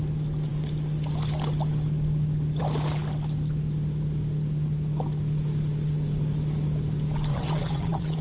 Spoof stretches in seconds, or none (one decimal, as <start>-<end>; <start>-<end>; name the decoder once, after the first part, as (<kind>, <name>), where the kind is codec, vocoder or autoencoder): 7.3-8.2 (vocoder, Vocos)